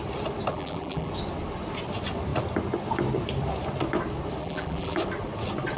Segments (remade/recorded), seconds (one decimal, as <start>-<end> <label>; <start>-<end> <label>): 0.0-0.5 recorded; 0.5-1.1 remade; 1.1-4.4 recorded; 4.4-5.0 remade; 5.0-5.8 recorded